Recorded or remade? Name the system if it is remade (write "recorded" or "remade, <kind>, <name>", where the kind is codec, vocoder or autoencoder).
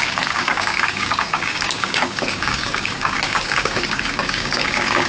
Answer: remade, codec, DAC